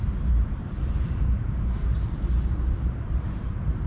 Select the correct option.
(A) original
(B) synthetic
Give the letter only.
B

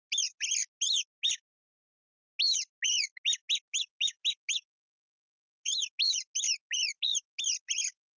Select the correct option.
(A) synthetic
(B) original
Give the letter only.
B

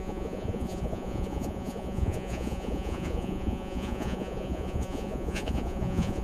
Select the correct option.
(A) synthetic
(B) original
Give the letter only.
A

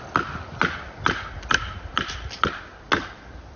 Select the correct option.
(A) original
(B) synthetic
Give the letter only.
A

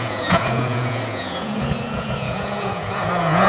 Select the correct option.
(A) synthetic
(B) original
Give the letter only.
A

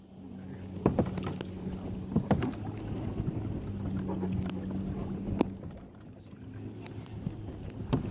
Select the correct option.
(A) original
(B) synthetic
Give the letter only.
A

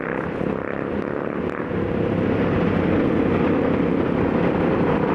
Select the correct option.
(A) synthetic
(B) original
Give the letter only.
B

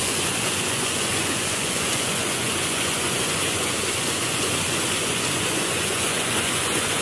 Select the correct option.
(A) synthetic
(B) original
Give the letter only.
A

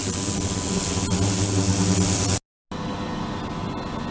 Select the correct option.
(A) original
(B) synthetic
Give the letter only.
A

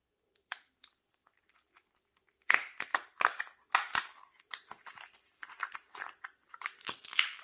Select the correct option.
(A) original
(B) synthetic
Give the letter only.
B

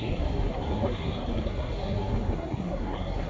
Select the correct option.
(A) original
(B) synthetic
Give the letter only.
B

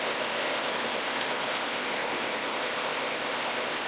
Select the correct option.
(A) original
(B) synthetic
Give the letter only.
B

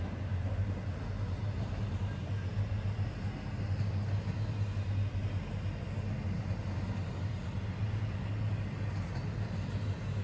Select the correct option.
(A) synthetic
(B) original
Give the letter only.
B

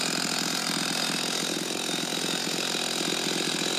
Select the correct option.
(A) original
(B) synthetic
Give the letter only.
A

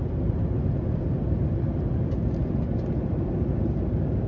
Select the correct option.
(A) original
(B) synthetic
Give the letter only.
A